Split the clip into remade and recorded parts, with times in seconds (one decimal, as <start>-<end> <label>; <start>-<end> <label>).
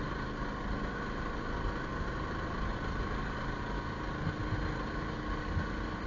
0.0-6.1 recorded